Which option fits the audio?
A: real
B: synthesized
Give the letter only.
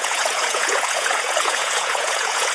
B